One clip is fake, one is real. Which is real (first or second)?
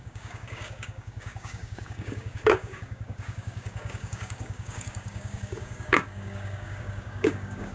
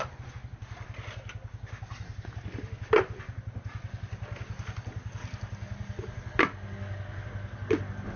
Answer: second